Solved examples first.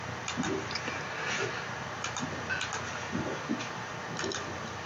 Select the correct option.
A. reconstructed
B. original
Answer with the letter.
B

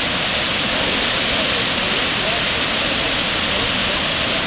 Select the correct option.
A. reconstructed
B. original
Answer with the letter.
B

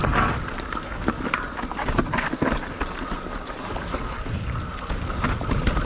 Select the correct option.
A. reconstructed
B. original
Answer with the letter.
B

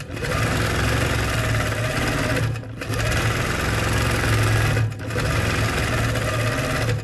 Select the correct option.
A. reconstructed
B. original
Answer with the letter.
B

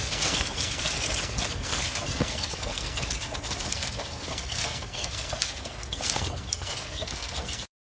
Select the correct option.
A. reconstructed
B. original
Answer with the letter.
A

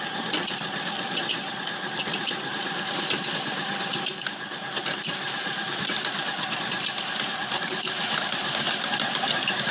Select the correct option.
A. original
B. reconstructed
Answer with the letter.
A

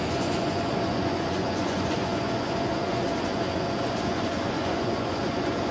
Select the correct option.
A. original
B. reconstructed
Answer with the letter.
B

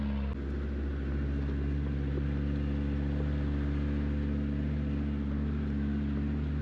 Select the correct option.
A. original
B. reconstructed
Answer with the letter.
A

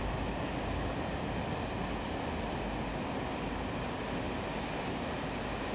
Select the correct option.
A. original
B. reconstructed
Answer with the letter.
A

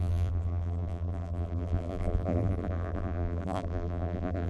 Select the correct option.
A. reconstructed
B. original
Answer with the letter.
A